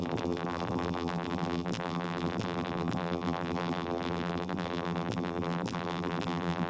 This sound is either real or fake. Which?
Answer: fake